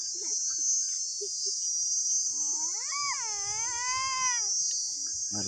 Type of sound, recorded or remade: recorded